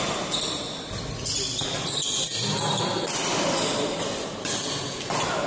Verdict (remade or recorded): recorded